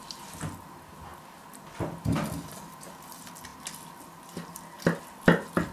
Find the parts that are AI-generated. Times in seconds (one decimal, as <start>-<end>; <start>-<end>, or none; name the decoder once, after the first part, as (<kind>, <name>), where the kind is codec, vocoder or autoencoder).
none